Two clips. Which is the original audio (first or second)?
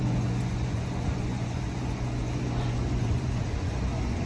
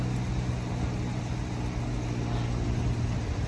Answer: second